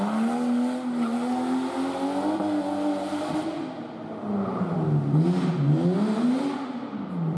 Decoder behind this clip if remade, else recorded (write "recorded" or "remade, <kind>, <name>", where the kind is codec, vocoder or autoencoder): recorded